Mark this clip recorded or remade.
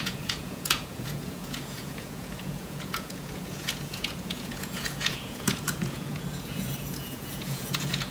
remade